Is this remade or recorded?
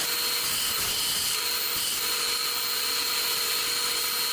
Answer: recorded